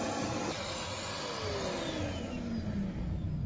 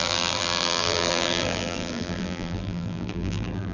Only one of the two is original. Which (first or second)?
first